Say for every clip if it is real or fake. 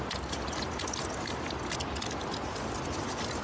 real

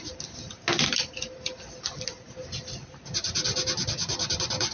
real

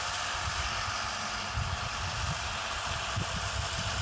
real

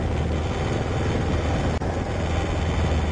real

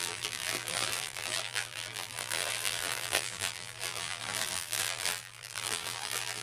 fake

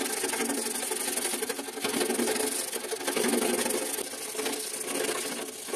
real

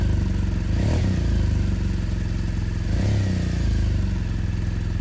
real